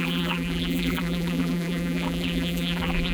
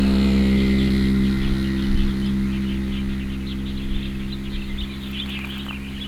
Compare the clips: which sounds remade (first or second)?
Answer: first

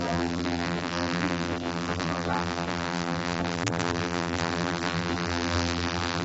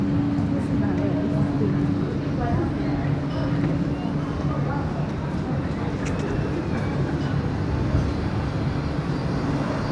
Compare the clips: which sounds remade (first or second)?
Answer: first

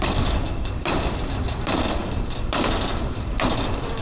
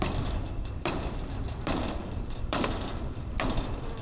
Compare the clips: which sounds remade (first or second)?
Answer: second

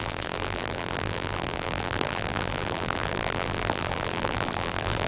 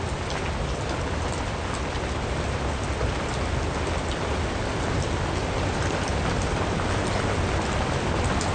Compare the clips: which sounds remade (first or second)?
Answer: first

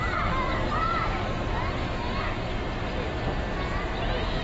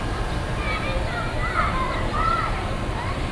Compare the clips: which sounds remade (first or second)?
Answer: second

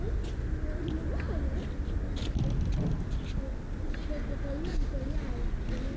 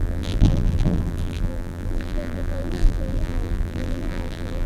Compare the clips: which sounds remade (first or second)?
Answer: second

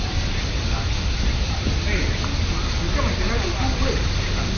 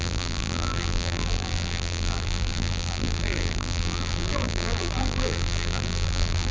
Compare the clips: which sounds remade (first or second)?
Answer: second